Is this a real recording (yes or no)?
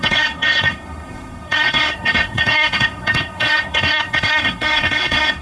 no